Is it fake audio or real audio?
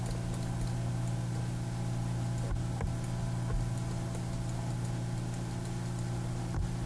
real